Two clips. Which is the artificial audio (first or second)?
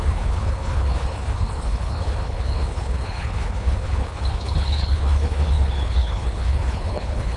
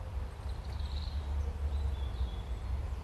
first